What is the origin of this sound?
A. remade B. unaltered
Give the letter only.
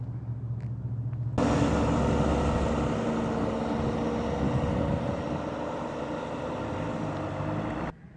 B